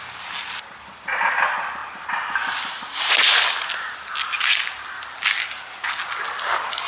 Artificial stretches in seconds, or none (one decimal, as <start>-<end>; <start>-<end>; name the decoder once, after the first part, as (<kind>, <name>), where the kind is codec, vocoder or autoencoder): none